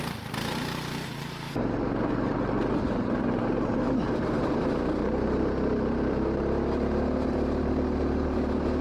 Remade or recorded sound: remade